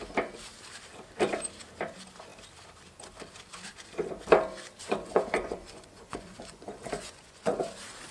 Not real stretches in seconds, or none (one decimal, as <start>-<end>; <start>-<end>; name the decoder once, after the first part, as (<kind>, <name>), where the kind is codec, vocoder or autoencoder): 4.8-7.6 (vocoder, Vocos)